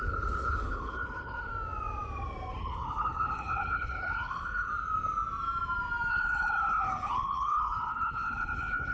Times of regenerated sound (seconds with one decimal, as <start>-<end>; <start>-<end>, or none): 0.0-1.5; 2.6-4.7; 6.1-8.9